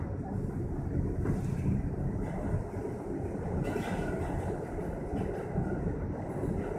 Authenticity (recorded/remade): recorded